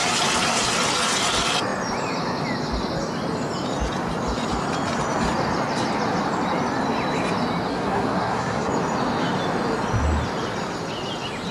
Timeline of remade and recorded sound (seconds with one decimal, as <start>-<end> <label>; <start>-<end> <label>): 0.0-7.7 recorded; 7.7-8.7 remade; 8.7-11.5 recorded